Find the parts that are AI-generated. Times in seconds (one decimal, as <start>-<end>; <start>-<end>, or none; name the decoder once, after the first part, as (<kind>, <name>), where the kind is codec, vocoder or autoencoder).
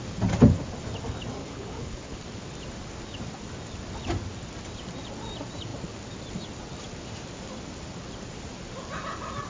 1.4-2.2 (codec, HILCodec)